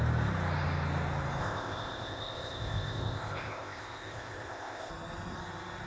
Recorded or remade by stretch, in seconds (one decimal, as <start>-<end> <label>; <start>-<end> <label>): 0.0-1.4 recorded; 1.4-4.9 remade; 4.9-5.9 recorded